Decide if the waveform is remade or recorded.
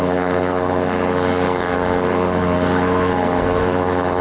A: remade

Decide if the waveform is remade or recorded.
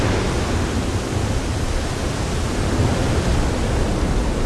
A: recorded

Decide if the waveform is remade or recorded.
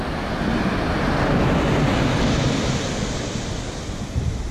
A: recorded